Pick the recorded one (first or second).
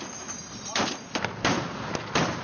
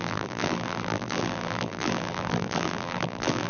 first